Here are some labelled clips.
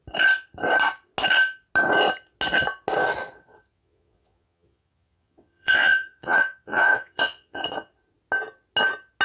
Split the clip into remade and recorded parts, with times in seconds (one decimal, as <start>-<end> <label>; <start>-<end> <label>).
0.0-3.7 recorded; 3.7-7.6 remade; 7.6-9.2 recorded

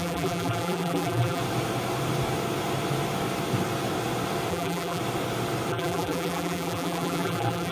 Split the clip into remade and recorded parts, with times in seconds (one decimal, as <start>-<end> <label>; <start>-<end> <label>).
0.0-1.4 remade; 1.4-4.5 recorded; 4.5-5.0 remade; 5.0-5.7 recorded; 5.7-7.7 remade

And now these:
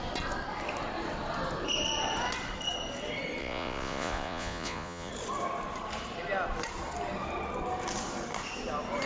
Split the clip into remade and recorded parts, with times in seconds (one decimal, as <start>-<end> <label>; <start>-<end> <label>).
0.0-3.4 recorded; 3.4-5.1 remade; 5.1-9.1 recorded

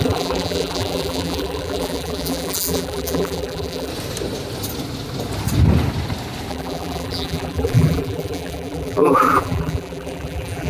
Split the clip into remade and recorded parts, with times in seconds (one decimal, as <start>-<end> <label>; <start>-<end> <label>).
0.0-3.9 remade; 3.9-6.5 recorded; 6.5-10.7 remade